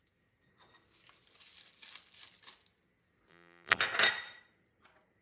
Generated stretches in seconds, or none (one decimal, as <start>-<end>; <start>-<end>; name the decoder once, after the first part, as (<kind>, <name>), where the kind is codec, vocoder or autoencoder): 3.3-3.8 (vocoder, BigVGAN v2)